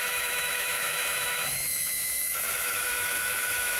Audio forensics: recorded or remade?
remade